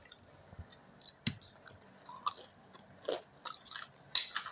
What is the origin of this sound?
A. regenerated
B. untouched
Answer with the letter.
B